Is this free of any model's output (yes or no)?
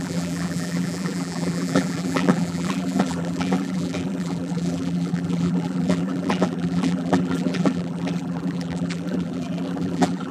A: no